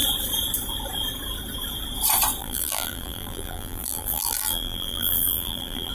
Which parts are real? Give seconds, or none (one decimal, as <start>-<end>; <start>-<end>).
0.0-2.4